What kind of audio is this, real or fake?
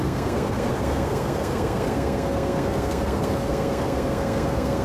fake